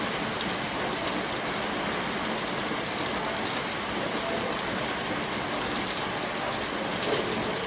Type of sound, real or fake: real